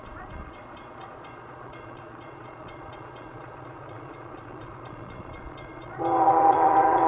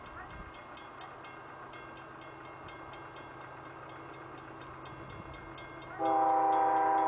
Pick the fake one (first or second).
first